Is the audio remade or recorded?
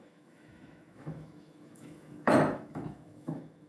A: remade